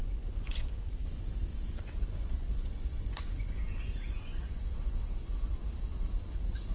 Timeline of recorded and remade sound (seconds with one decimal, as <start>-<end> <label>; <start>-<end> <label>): 0.0-0.9 remade; 0.9-1.5 recorded; 1.5-5.5 remade; 5.5-6.7 recorded